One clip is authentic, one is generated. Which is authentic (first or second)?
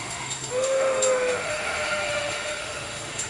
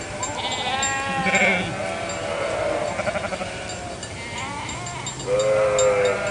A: second